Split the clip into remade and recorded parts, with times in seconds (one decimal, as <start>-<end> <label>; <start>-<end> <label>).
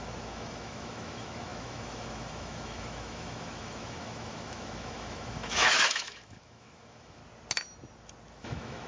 0.0-7.2 remade; 7.2-8.4 recorded; 8.4-8.9 remade